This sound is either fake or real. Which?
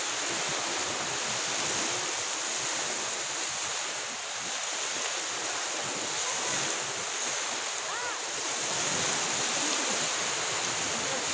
real